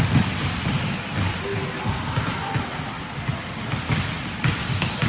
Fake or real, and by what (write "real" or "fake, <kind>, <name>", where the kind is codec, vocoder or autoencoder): real